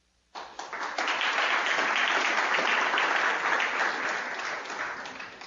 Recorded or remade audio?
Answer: recorded